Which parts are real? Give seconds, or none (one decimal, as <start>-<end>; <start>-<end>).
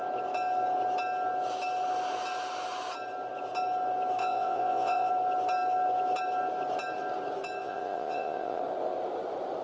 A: 0.0-4.2; 5.1-7.6; 8.6-9.6